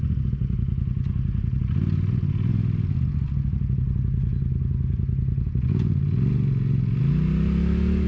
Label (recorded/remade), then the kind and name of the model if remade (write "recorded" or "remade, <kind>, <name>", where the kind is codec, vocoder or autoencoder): recorded